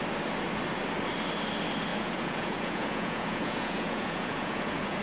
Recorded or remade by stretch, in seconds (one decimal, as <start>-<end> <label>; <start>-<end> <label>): 0.0-1.9 recorded; 1.9-5.0 remade